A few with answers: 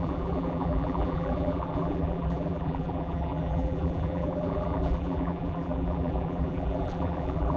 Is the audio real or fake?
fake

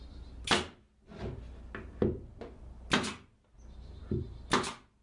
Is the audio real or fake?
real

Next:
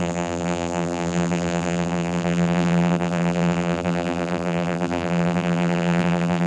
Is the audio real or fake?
fake